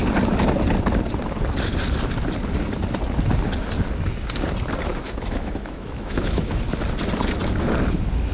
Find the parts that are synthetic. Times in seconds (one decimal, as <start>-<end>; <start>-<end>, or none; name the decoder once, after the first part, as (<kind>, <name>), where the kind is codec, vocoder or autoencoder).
4.9-6.6 (autoencoder, DAC-VAE)